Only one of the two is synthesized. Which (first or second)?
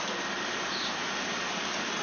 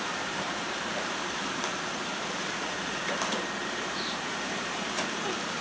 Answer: second